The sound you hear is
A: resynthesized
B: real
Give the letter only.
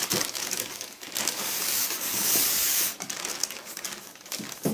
A